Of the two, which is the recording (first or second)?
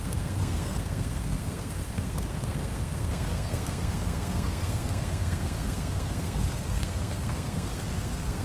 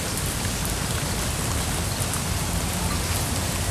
second